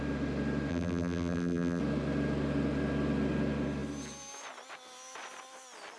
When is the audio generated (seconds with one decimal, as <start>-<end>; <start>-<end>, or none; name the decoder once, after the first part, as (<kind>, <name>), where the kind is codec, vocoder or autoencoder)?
0.7-1.8 (vocoder, BigVGAN v2)